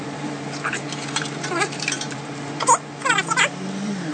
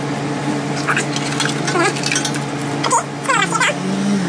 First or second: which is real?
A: second